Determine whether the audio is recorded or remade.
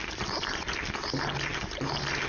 recorded